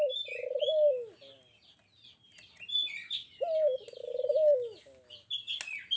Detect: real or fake real